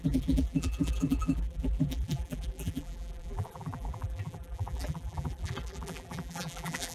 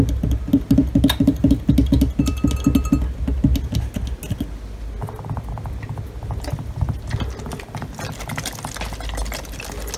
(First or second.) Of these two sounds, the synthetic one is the first